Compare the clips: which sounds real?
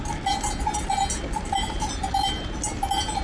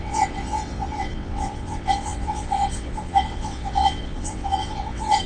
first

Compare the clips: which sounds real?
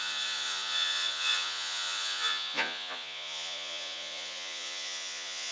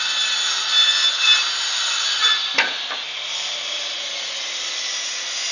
second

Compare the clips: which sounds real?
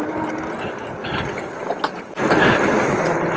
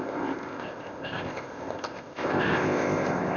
first